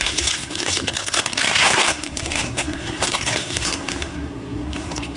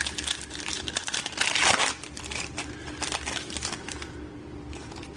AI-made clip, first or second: first